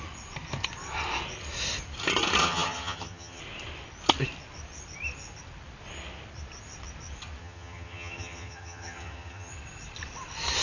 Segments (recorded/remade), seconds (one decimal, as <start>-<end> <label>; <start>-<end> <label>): 0.0-2.4 recorded; 2.4-3.4 remade; 3.4-7.4 recorded; 7.4-9.5 remade; 9.5-10.6 recorded